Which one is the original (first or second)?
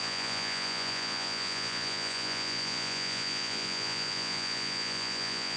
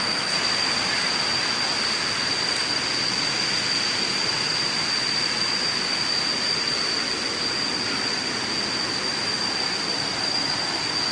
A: second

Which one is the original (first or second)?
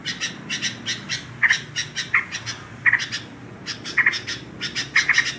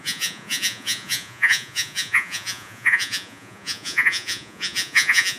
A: first